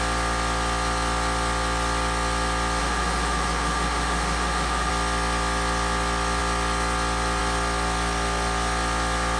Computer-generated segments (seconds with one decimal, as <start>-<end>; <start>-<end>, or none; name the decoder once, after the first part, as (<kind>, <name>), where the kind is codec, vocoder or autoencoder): 2.8-4.9 (autoencoder, DAC-VAE)